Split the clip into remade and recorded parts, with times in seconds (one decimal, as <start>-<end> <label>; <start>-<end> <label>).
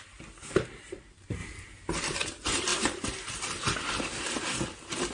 0.0-5.1 recorded